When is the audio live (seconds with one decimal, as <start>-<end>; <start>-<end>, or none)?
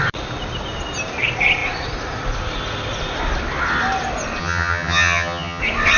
0.0-4.4; 5.6-6.0